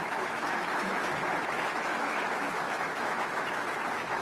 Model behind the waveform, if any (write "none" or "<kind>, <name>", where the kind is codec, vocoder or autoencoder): autoencoder, DAC-VAE